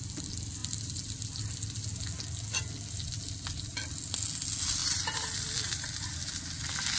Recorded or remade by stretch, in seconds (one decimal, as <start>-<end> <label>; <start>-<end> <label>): 0.0-0.6 recorded; 0.6-1.4 remade; 1.4-4.8 recorded; 4.8-6.3 remade; 6.3-7.0 recorded